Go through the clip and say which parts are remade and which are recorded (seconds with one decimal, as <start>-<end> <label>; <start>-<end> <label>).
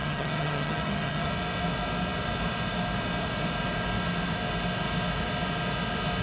0.0-1.3 remade; 1.3-6.2 recorded